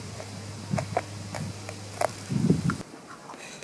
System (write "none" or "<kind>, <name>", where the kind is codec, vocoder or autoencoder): none